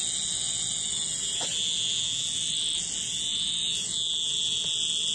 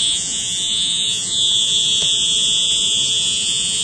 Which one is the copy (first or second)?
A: second